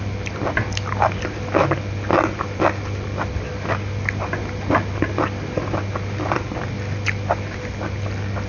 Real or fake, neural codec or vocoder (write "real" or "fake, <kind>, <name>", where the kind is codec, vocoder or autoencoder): real